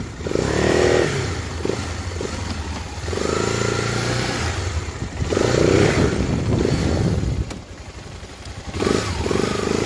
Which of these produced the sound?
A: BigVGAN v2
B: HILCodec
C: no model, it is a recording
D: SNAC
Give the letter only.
A